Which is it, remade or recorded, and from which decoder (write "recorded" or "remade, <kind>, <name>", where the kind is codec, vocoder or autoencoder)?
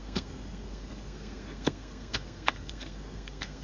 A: remade, codec, SNAC